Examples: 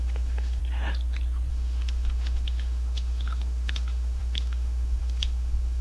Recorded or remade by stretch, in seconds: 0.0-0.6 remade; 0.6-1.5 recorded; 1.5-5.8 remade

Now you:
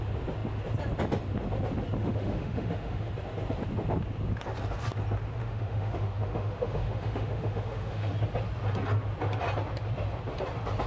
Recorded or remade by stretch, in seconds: 0.0-2.0 recorded; 2.0-3.1 remade; 3.1-5.4 recorded; 5.4-8.1 remade; 8.1-10.9 recorded

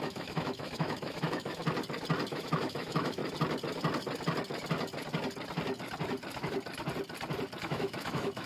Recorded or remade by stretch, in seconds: 0.0-1.6 remade; 1.6-2.3 recorded; 2.3-3.2 remade; 3.2-7.6 recorded; 7.6-8.5 remade

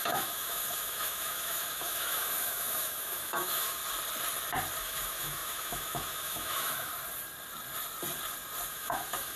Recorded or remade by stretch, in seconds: 0.0-3.8 remade; 3.8-4.8 recorded; 4.8-6.9 remade; 6.9-8.7 recorded; 8.7-9.4 remade

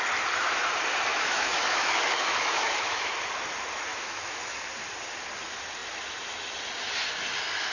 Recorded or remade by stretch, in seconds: 0.0-1.1 recorded; 1.1-3.1 remade; 3.1-3.9 recorded; 3.9-4.6 remade; 4.6-7.7 recorded